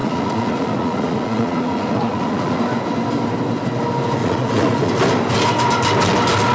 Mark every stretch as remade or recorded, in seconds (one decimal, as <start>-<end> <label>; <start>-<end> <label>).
0.0-2.6 remade; 2.6-4.2 recorded; 4.2-4.9 remade; 4.9-6.5 recorded